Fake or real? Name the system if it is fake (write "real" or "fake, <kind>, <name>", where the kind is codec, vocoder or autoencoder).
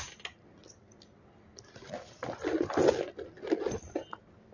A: real